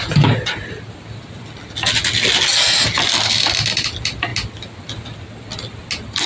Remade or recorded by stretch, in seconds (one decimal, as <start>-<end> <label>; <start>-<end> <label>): 0.0-6.3 recorded